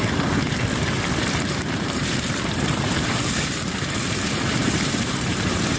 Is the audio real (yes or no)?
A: no